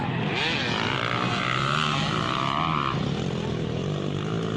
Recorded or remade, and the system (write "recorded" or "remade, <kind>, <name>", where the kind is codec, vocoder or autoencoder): recorded